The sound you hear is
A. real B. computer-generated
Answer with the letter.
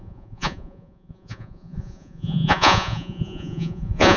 B